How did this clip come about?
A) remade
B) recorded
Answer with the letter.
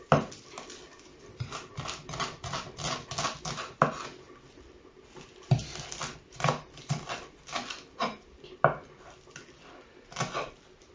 B